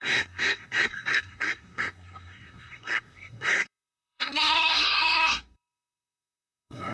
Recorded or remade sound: remade